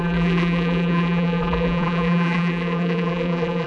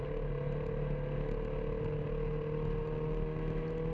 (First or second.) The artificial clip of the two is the first